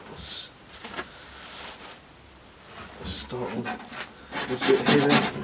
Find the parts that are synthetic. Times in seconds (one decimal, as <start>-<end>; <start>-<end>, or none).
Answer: none